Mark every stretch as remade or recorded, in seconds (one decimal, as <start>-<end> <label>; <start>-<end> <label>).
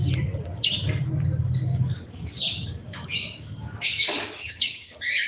0.0-1.7 recorded; 1.7-5.3 remade